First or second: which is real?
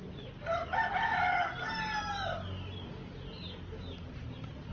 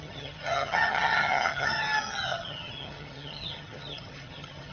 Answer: first